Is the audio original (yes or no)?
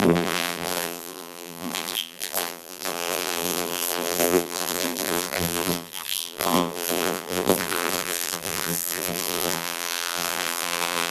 no